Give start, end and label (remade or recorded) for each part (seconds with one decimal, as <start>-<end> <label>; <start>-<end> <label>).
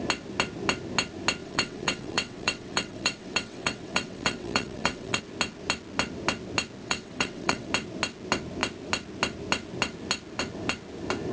0.0-1.4 recorded; 1.4-5.2 remade; 5.2-6.8 recorded; 6.8-7.7 remade; 7.7-11.3 recorded